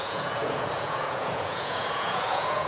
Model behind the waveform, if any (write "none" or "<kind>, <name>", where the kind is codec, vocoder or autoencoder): vocoder, Vocos